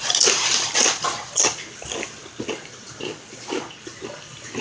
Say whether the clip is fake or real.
real